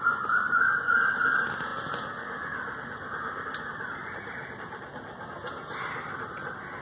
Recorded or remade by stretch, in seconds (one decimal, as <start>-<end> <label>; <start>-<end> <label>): 0.0-4.0 recorded; 4.0-4.8 remade; 4.8-6.8 recorded